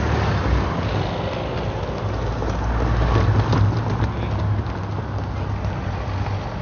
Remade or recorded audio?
recorded